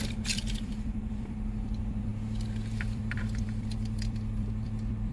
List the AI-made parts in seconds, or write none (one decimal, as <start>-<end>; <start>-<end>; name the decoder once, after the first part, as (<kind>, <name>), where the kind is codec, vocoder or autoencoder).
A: 0.0-2.1 (vocoder, BigVGAN v2); 2.7-5.1